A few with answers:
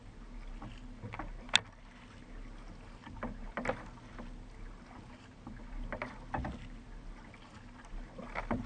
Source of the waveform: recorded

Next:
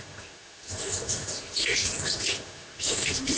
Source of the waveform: remade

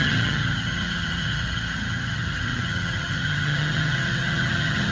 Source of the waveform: remade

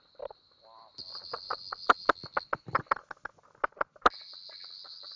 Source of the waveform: recorded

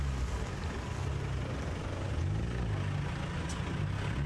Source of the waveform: recorded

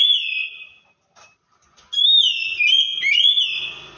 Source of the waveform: recorded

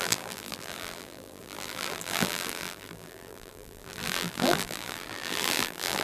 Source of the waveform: remade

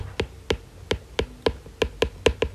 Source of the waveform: recorded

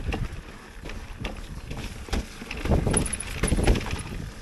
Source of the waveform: recorded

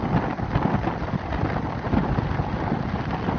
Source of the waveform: recorded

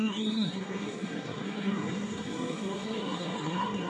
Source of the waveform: remade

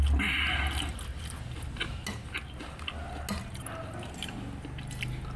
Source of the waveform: recorded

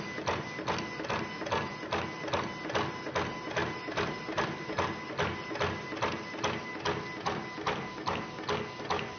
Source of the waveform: recorded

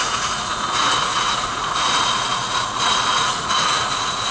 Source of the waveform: remade